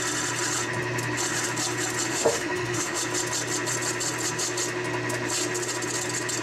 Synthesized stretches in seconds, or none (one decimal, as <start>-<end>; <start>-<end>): 2.1-3.0